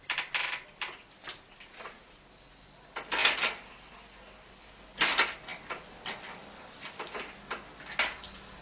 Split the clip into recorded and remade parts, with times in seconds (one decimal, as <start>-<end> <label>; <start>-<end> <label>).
0.0-8.6 recorded